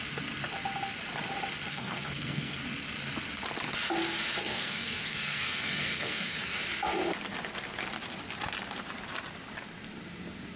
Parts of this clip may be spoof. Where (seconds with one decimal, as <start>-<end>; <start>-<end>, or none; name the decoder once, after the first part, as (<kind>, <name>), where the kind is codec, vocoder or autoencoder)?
1.7-2.6 (codec, SNAC); 4.4-6.6